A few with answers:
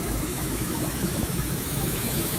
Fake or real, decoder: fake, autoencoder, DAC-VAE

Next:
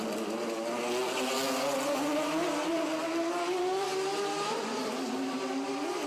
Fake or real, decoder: real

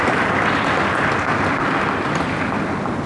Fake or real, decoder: real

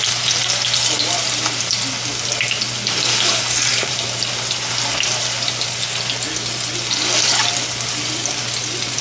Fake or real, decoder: real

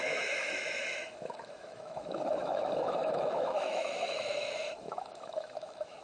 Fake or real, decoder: fake, autoencoder, DAC-VAE